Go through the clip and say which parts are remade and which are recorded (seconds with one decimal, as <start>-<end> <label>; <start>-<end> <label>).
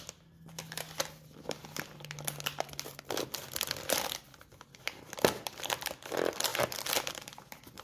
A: 0.0-7.8 recorded